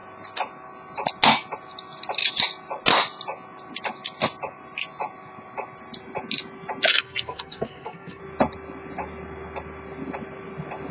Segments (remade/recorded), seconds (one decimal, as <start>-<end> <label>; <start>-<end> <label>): 0.0-6.9 recorded; 6.9-8.2 remade; 8.2-10.9 recorded